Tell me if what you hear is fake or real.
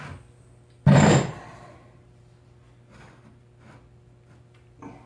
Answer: real